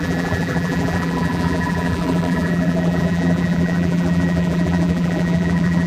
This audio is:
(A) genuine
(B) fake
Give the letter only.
B